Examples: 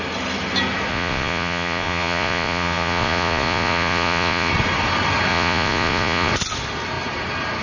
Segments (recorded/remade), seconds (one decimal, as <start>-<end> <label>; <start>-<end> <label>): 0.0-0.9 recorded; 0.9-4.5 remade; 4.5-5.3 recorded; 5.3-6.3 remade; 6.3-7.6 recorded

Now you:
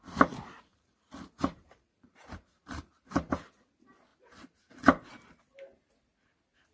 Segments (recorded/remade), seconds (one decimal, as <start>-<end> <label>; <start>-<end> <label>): 0.0-0.7 recorded; 0.7-3.3 remade; 3.3-6.7 recorded

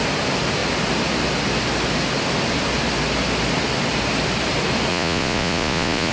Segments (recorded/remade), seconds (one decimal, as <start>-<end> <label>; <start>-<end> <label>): 0.0-4.9 recorded; 4.9-6.1 remade

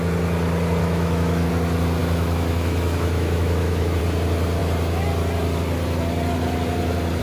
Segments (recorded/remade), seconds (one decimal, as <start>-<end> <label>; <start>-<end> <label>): 0.0-0.8 recorded; 0.8-1.5 remade; 1.5-2.0 recorded; 2.0-4.0 remade; 4.0-7.2 recorded